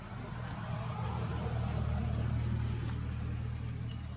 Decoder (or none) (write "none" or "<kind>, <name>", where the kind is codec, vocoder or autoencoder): none